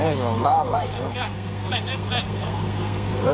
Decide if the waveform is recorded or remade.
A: remade